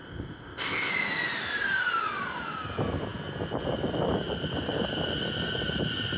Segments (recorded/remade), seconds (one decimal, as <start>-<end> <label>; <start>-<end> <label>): 0.0-0.9 remade; 0.9-6.2 recorded